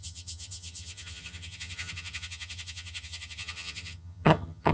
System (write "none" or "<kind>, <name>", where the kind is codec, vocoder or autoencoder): vocoder, HiFi-GAN